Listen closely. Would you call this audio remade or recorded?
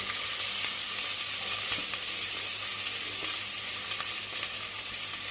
recorded